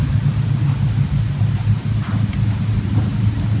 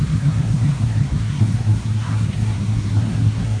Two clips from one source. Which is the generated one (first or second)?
second